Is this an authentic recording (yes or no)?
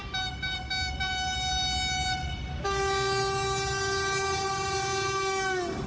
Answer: yes